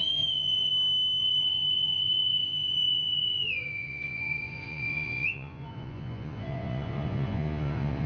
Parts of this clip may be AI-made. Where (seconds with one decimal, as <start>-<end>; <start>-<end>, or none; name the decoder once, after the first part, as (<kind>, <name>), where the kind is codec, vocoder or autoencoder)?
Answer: 0.0-0.7 (vocoder, Vocos); 1.2-8.1